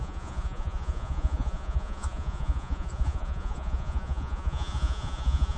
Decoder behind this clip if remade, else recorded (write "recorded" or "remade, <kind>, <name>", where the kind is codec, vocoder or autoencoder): remade, vocoder, Vocos